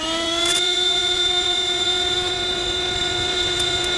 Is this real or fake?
fake